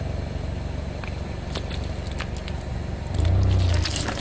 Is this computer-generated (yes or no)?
no